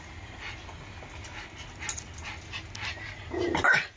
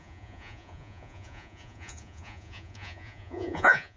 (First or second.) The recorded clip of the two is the first